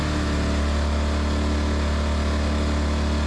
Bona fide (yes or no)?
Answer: yes